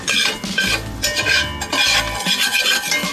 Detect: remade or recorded recorded